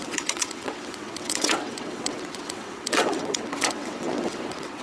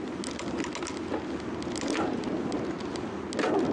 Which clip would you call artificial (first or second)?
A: first